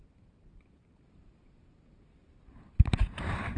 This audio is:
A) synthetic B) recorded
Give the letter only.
B